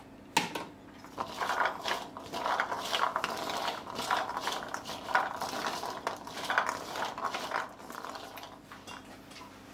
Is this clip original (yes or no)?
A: yes